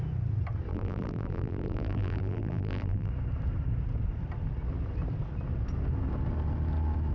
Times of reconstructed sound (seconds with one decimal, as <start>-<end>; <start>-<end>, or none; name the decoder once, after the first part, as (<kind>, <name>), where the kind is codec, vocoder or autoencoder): 0.7-3.1 (vocoder, BigVGAN v2)